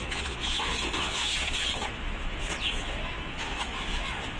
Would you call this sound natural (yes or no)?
no